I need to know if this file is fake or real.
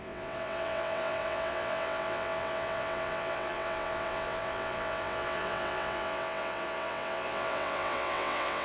fake